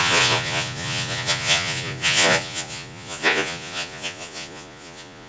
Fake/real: fake